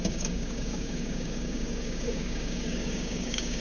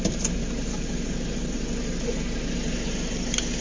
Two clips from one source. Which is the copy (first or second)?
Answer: first